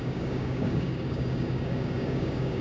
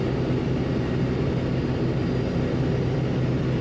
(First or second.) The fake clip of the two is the first